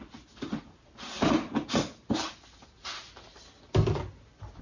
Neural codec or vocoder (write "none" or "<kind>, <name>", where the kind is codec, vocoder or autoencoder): none